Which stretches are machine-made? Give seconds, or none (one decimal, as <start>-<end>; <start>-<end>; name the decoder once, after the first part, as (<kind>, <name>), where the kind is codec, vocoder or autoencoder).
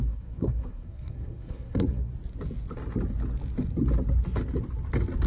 0.0-2.1 (codec, SNAC)